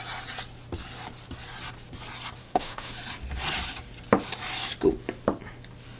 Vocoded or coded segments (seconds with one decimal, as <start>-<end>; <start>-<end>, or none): 2.4-2.9